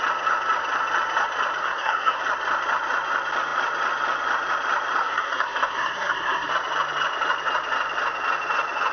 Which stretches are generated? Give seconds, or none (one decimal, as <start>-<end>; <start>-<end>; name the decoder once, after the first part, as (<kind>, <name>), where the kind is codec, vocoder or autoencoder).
1.6-2.2 (codec, SNAC); 5.0-6.5